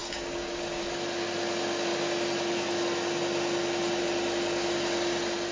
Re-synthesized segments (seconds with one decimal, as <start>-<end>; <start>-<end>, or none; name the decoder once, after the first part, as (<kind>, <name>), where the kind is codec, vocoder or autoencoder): 0.0-0.8 (codec, DAC)